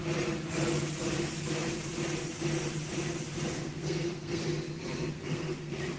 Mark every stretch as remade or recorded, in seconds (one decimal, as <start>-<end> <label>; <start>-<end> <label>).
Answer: 0.0-3.5 recorded; 3.5-4.4 remade; 4.4-5.1 recorded; 5.1-6.0 remade